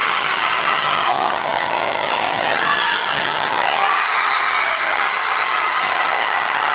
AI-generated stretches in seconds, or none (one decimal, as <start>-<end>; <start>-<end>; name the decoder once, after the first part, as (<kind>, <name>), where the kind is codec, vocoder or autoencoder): 0.0-6.7 (vocoder, HiFi-GAN)